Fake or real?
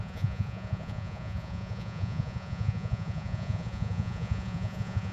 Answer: fake